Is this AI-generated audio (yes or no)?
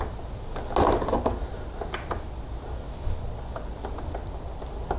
no